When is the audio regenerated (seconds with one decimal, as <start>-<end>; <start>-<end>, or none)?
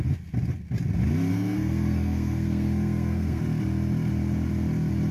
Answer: 1.3-3.4